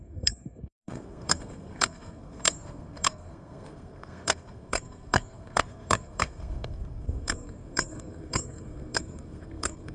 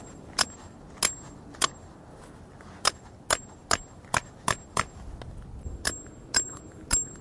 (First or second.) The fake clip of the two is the first